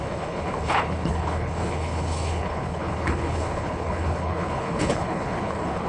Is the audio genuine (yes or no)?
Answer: no